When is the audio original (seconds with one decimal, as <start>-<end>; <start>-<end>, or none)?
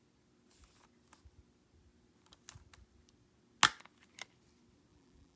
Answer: 0.0-4.9